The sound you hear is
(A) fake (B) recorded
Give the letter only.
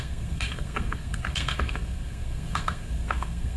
A